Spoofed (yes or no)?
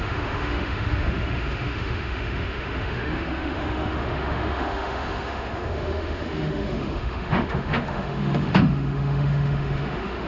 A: yes